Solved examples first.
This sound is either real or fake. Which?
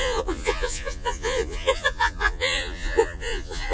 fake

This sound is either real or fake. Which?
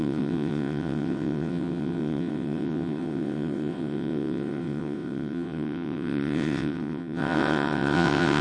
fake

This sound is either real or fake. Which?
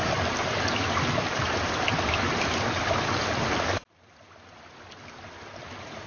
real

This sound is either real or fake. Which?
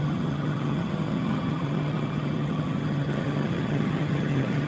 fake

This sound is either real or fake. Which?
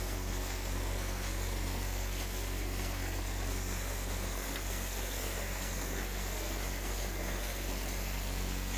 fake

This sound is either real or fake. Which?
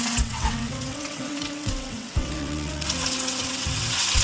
fake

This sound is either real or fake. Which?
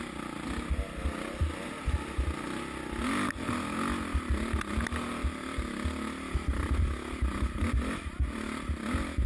real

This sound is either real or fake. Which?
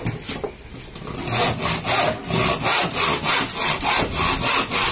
real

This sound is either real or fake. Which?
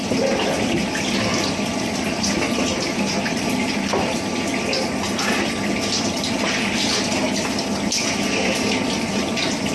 real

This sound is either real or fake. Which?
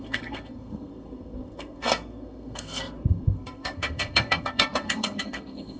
fake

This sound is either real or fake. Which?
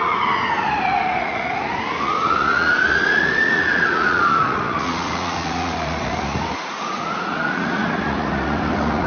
fake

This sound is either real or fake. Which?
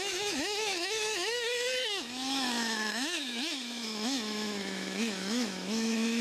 fake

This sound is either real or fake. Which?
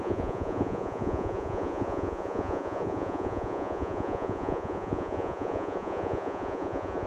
fake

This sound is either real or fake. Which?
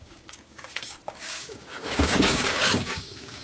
fake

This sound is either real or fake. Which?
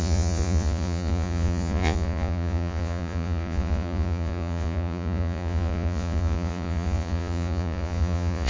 fake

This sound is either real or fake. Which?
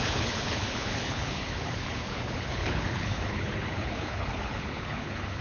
fake